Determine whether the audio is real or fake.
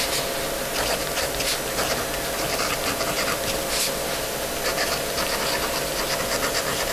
real